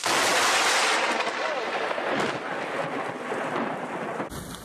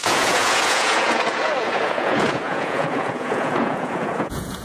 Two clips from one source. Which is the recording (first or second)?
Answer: first